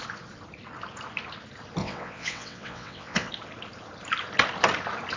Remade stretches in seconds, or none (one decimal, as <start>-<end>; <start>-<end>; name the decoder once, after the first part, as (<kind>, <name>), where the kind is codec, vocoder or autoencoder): 1.8-3.3 (vocoder, WaveNeXt)